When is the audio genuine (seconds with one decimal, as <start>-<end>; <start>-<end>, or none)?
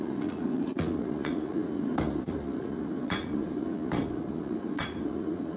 none